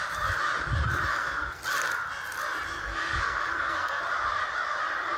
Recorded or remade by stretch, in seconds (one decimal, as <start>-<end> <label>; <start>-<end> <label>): 0.0-1.1 recorded; 1.1-1.6 remade; 1.6-2.8 recorded; 2.8-4.0 remade; 4.0-5.2 recorded